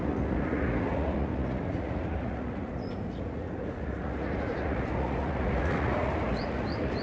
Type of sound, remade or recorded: remade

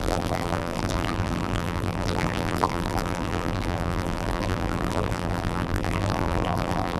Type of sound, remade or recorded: remade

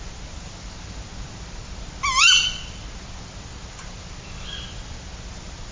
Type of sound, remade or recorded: recorded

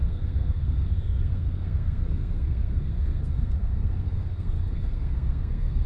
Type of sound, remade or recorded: remade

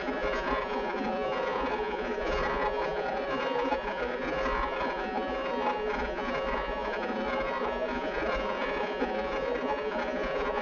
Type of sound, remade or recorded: remade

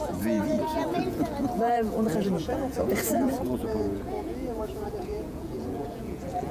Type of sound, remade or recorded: remade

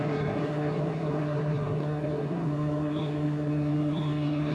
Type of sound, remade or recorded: remade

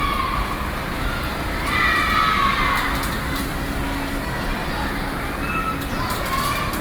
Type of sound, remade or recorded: recorded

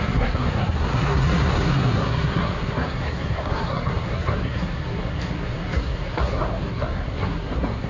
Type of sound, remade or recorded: remade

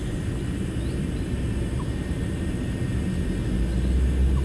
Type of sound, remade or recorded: recorded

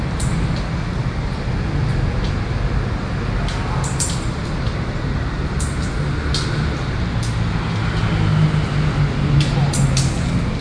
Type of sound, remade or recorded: recorded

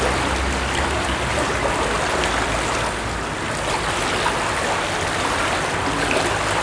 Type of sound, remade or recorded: recorded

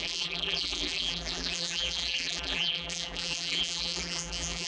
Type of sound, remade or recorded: remade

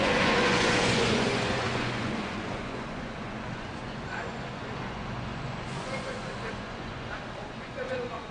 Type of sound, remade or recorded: remade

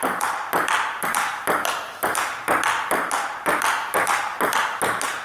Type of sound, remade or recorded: recorded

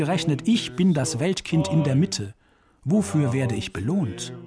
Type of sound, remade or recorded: recorded